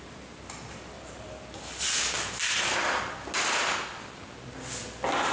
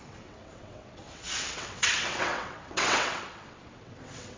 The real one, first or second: first